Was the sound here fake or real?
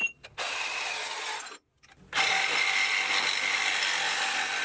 real